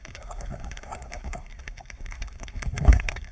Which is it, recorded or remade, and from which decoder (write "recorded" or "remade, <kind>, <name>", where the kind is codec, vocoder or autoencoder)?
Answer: remade, codec, SNAC